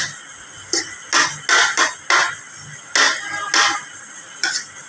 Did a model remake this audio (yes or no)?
no